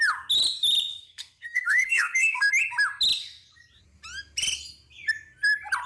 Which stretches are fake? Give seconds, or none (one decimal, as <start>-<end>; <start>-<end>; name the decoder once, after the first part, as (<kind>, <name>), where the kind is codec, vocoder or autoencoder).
0.9-2.5 (codec, SNAC)